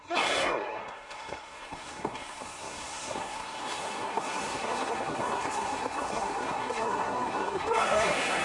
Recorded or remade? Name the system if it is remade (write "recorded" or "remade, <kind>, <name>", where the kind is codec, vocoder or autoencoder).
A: remade, codec, SNAC